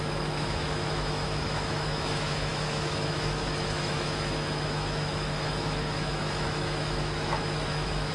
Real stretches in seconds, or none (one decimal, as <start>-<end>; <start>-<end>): none